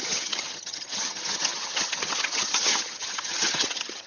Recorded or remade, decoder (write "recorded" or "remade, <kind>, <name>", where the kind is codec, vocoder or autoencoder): remade, vocoder, HiFi-GAN